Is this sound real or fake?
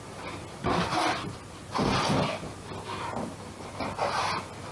real